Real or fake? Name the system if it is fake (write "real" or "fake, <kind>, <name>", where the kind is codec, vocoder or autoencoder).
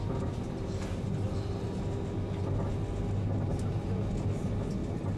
real